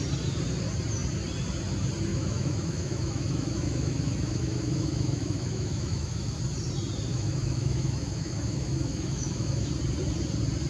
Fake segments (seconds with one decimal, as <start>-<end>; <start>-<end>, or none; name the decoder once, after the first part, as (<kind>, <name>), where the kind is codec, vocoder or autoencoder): 2.1-6.4 (autoencoder, DAC-VAE); 7.1-9.7